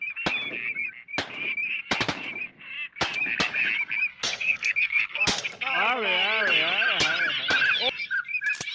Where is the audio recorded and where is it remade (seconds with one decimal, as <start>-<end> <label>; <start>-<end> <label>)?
0.0-4.1 recorded; 4.1-5.2 remade; 5.2-8.7 recorded